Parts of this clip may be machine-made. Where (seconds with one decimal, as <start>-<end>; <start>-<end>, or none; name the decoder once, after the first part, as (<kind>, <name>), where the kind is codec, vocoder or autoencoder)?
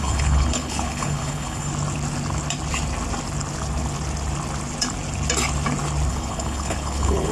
0.0-1.7 (codec, HILCodec); 6.1-7.3